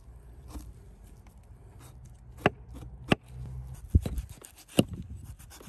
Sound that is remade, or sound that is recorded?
recorded